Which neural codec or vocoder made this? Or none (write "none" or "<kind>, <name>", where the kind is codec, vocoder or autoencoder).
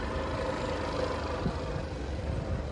none